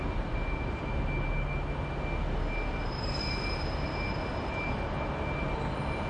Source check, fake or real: real